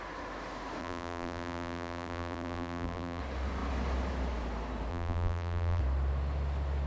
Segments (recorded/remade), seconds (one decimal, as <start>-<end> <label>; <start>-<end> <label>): 0.0-0.8 recorded; 0.8-3.2 remade; 3.2-4.9 recorded; 4.9-5.8 remade; 5.8-6.9 recorded